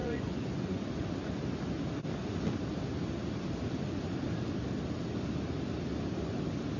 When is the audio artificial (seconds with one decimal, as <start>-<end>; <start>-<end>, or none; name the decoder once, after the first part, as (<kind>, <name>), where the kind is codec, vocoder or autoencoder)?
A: 0.0-0.8 (vocoder, Vocos)